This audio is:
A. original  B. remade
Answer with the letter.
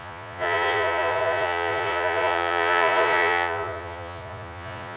B